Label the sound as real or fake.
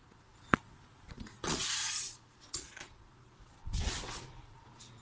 fake